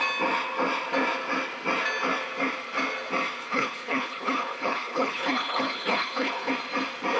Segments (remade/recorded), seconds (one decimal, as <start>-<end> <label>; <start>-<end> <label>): 0.0-3.4 recorded; 3.4-6.5 remade; 6.5-7.2 recorded